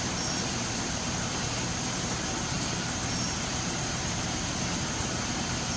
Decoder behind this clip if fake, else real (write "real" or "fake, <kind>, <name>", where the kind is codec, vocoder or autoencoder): fake, vocoder, BigVGAN v2